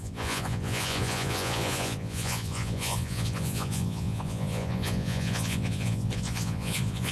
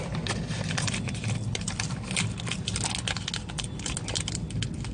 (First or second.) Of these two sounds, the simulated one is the first